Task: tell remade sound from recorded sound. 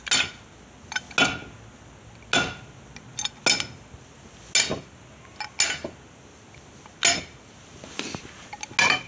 recorded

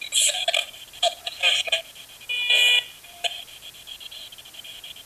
remade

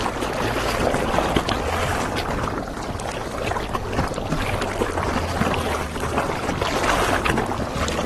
recorded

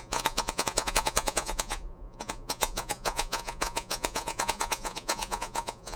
remade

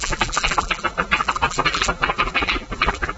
remade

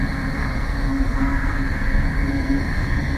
remade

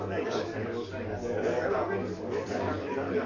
remade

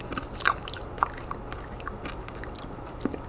recorded